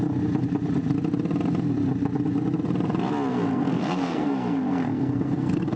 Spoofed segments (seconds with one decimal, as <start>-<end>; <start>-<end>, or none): 3.3-5.8

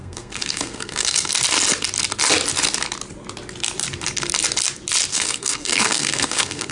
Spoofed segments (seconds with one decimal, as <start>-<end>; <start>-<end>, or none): 0.0-1.3; 5.1-6.7

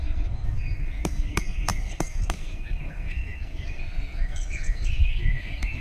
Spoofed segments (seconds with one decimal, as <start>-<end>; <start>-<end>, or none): 0.0-5.8

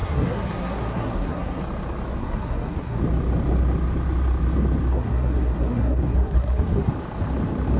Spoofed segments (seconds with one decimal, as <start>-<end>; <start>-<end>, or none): 0.0-1.6; 2.2-3.0; 4.9-6.9

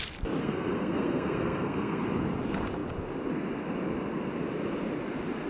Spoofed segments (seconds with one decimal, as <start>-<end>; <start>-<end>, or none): 0.4-2.0

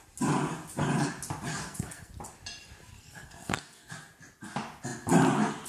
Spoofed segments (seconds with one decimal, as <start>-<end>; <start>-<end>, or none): 1.5-2.1; 2.9-3.9

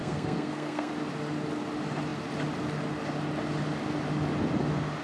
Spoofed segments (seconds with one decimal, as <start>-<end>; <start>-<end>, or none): 0.0-0.9

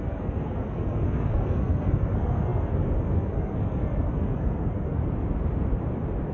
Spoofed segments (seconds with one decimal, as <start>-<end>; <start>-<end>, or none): 0.0-5.0